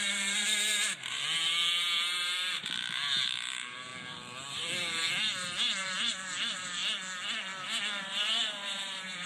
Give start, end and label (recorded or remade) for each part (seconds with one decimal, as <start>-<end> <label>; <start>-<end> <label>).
0.0-3.9 remade; 3.9-4.5 recorded; 4.5-6.8 remade; 6.8-8.0 recorded; 8.0-9.3 remade